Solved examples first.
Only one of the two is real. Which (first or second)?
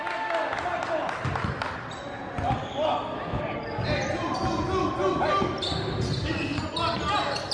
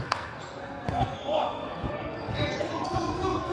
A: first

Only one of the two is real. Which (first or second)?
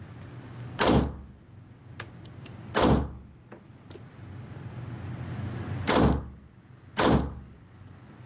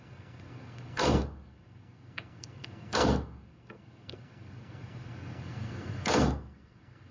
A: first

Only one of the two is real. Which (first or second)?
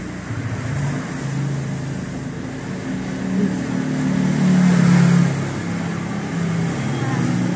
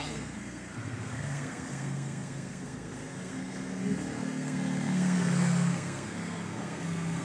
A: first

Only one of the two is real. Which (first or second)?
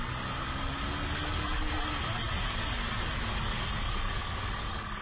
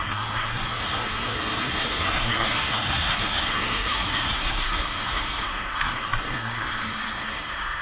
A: first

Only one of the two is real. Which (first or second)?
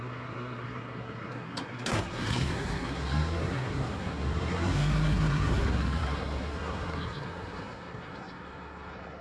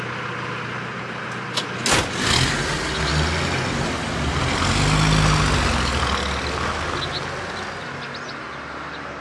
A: second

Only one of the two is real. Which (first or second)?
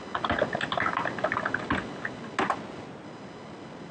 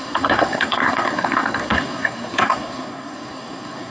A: first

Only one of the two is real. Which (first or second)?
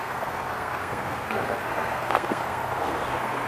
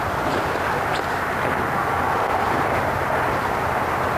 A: second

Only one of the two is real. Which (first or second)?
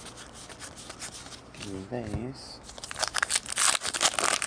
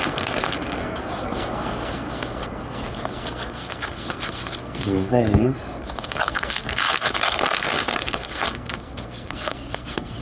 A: first